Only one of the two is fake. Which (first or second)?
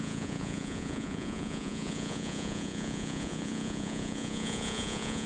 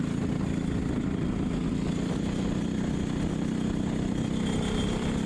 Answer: first